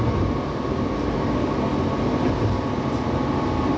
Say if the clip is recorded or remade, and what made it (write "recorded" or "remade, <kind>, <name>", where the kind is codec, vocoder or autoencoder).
recorded